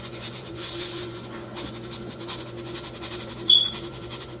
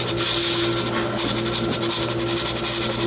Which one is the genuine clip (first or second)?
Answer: second